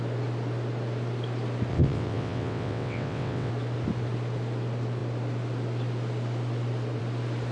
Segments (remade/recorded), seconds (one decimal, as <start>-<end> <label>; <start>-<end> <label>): 0.0-1.7 recorded; 1.7-3.5 remade; 3.5-7.5 recorded